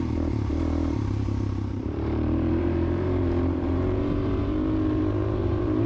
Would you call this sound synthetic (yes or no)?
yes